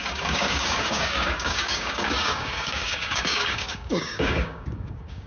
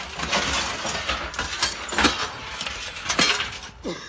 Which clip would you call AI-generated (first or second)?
first